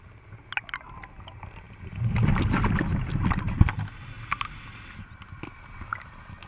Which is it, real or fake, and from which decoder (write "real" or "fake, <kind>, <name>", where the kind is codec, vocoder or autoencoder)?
real